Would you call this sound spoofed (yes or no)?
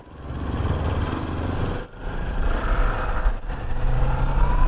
no